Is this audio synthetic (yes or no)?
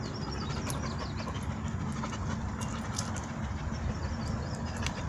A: no